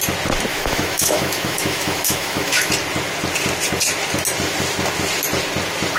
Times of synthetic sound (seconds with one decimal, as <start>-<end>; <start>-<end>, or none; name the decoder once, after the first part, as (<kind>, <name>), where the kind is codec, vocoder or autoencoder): 0.5-2.7 (autoencoder, DAC-VAE)